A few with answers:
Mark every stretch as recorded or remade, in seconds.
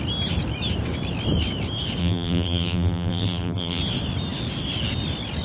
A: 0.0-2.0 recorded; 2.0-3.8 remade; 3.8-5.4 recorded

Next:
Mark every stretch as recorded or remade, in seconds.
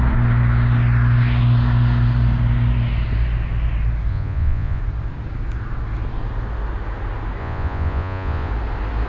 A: 0.0-4.1 recorded; 4.1-4.8 remade; 4.8-7.4 recorded; 7.4-8.5 remade; 8.5-9.1 recorded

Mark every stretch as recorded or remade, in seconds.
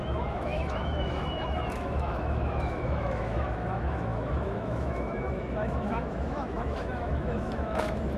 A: 0.0-8.2 remade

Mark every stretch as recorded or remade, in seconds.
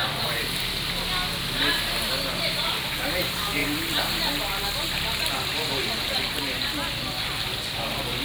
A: 0.0-8.2 recorded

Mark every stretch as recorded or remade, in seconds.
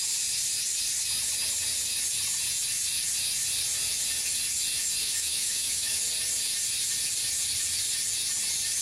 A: 0.0-5.0 recorded; 5.0-6.0 remade; 6.0-8.8 recorded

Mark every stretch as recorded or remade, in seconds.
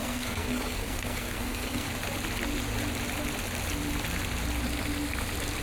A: 0.0-1.9 remade; 1.9-5.6 recorded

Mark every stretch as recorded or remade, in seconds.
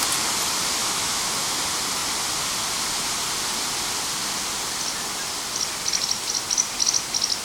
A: 0.0-0.8 recorded; 0.8-1.6 remade; 1.6-7.4 recorded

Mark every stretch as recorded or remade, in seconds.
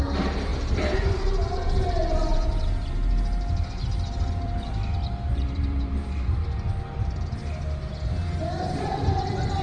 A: 0.0-6.4 remade; 6.4-7.0 recorded; 7.0-7.4 remade; 7.4-8.6 recorded; 8.6-9.6 remade